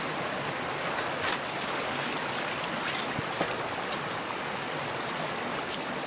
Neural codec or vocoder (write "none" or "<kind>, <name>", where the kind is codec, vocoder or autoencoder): none